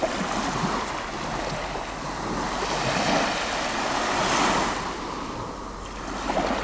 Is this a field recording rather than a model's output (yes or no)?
yes